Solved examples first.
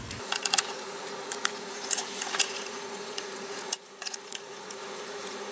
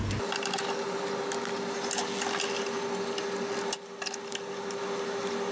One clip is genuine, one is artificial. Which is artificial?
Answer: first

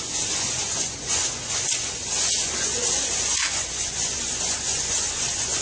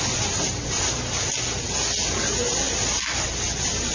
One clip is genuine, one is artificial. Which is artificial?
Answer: first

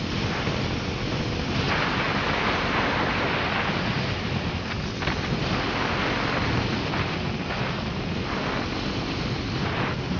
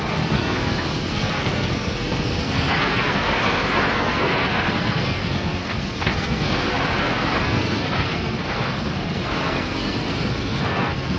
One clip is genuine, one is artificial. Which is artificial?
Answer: second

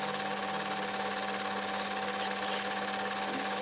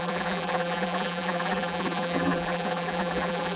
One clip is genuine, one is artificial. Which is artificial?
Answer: second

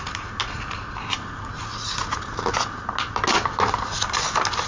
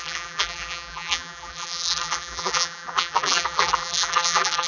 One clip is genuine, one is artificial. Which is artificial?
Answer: second